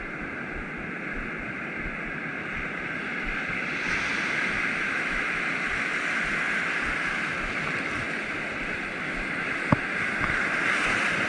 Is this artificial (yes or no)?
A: no